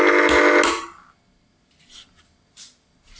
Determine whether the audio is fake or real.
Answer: real